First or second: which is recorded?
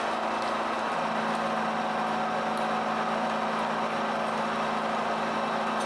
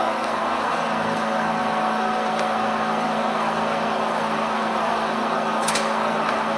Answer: first